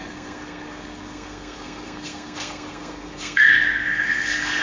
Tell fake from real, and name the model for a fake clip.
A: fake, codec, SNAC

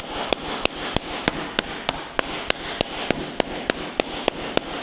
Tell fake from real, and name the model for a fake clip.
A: real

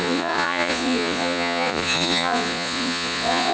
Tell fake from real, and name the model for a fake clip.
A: fake, vocoder, Vocos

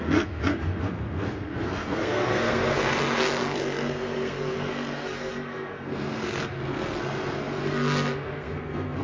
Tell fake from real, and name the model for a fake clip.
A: fake, codec, SNAC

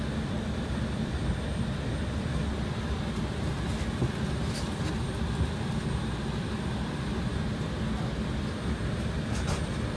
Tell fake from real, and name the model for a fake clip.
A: real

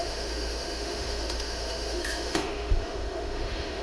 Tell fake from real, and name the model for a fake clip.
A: fake, autoencoder, DAC-VAE